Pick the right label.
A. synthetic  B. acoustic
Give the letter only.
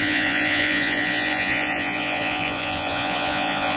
A